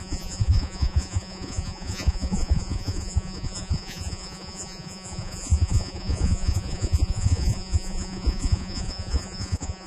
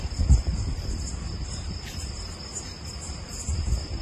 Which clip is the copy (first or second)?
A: first